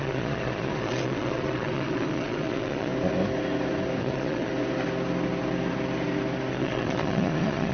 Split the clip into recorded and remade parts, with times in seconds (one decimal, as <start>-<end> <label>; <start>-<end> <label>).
0.0-2.9 remade; 2.9-4.0 recorded; 4.0-4.5 remade; 4.5-6.5 recorded; 6.5-7.7 remade